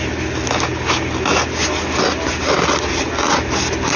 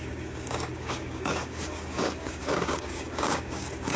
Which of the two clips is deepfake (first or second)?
second